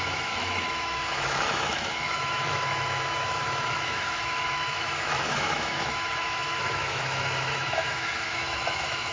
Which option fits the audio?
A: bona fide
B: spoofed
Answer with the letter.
B